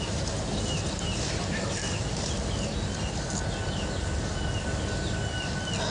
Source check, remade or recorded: recorded